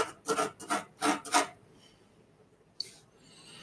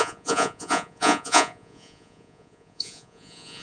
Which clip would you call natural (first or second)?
first